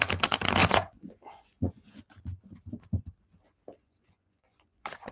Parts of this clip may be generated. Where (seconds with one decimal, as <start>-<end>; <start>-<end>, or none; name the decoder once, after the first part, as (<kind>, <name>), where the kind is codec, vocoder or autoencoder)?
0.6-2.0 (vocoder, Vocos); 3.8-5.1